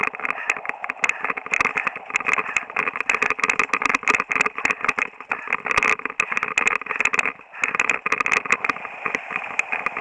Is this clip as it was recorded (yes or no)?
yes